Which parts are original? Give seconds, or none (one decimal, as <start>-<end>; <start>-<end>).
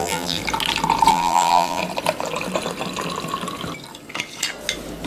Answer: 0.4-1.1; 1.8-5.1